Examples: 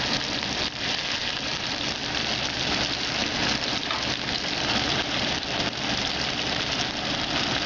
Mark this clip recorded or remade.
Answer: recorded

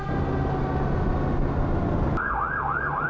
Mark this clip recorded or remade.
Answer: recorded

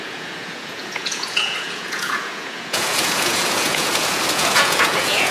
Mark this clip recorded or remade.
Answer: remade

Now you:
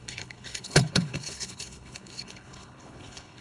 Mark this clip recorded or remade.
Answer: remade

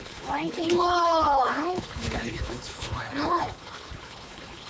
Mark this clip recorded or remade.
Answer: remade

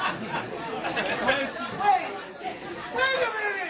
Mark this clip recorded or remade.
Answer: recorded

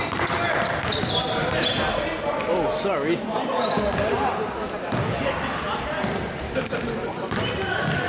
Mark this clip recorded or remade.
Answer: recorded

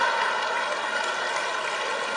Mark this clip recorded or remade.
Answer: recorded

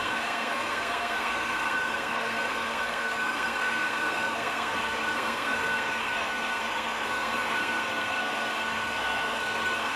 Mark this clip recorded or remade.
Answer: remade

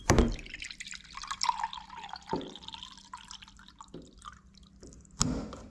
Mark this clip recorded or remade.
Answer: recorded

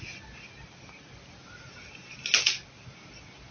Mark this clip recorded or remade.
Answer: recorded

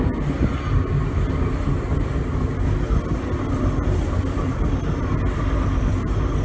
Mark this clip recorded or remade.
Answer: recorded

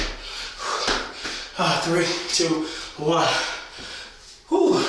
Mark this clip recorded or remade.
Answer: recorded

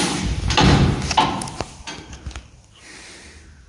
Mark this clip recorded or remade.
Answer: recorded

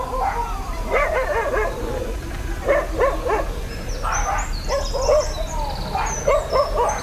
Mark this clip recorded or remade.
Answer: recorded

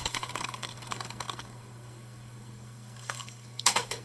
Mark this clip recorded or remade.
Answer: remade